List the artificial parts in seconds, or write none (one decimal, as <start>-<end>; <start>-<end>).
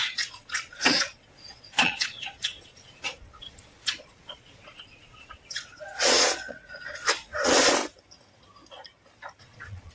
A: 0.0-7.8; 9.4-9.9